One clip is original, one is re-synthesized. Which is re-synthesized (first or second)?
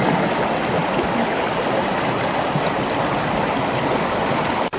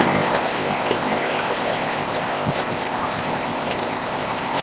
second